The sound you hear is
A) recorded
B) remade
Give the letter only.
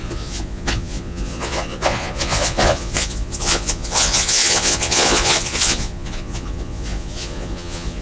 B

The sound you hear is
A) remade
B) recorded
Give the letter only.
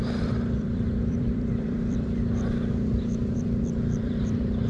A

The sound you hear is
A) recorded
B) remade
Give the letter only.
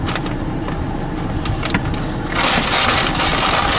A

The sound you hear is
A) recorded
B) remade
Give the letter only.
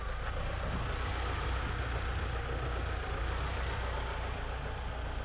A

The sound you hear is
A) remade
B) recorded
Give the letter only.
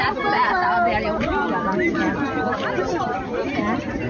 B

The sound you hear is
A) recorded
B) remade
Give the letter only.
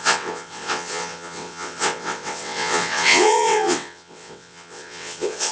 B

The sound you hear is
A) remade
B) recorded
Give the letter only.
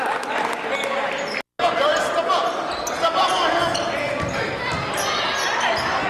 B